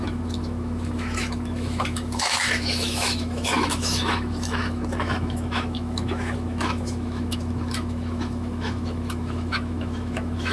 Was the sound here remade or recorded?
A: remade